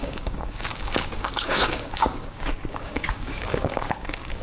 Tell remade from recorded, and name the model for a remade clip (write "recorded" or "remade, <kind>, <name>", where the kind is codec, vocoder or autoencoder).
remade, codec, DAC